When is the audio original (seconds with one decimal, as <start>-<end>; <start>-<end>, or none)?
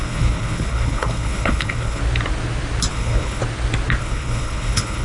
2.0-2.9; 3.4-4.0